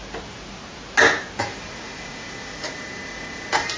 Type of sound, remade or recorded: recorded